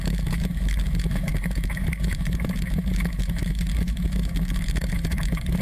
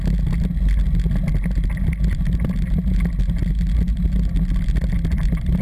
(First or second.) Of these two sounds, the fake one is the first